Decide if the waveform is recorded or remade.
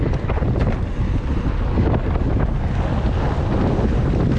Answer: recorded